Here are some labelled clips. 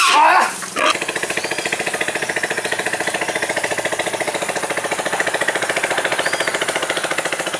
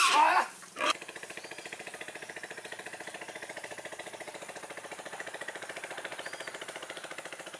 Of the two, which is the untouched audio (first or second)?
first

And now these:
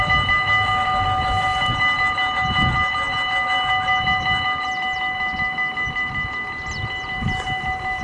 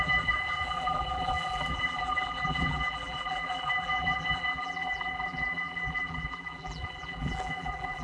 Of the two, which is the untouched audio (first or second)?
first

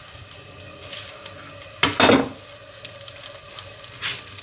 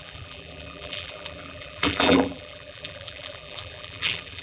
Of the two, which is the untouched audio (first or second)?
first